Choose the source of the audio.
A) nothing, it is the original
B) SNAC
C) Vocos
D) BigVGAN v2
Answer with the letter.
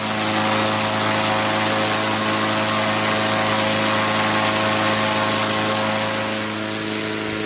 A